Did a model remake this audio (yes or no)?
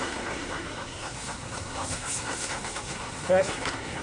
yes